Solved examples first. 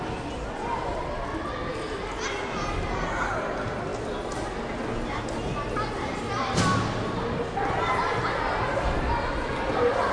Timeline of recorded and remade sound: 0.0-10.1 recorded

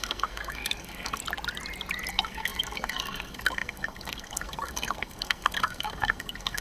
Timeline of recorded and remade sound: 0.0-1.2 remade; 1.2-2.1 recorded; 2.1-6.6 remade

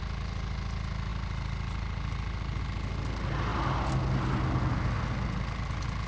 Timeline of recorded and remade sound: 0.0-6.1 recorded

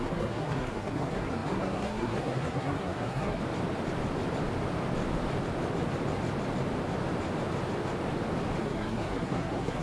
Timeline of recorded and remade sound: 0.0-3.4 remade; 3.4-8.6 recorded; 8.6-9.8 remade